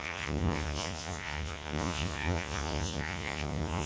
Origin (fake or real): fake